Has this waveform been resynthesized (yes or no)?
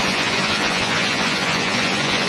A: yes